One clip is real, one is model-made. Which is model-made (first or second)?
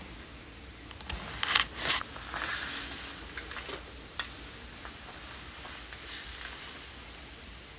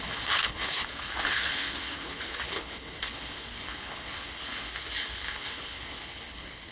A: second